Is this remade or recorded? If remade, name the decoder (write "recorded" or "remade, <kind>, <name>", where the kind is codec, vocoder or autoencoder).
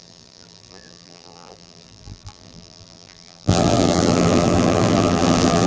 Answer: remade, vocoder, BigVGAN v2